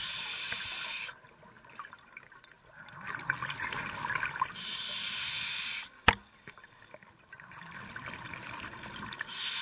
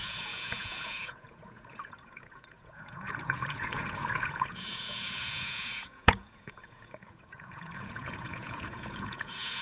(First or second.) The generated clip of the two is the second